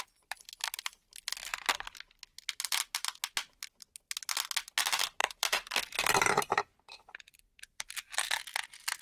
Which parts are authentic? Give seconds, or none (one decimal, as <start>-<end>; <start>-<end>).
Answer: 0.0-5.2; 7.9-9.0